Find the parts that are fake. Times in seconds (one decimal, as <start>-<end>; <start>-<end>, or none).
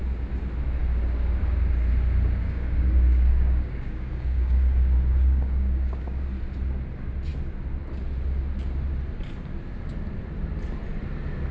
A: 2.4-6.2